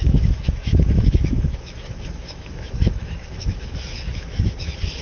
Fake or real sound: fake